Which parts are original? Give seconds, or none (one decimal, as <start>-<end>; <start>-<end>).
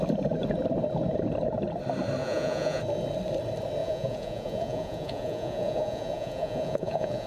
0.0-2.2; 2.8-3.8